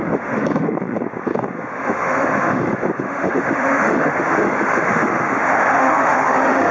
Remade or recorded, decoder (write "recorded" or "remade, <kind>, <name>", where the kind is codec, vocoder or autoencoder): remade, autoencoder, DAC-VAE